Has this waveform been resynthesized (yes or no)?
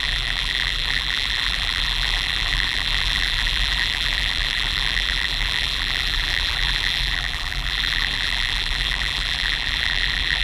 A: yes